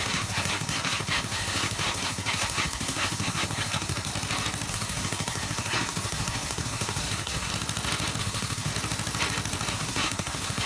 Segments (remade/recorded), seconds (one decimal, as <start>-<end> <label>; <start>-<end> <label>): 0.0-4.1 remade; 4.1-4.7 recorded; 4.7-7.5 remade; 7.5-8.2 recorded; 8.2-8.7 remade; 8.7-9.7 recorded; 9.7-10.7 remade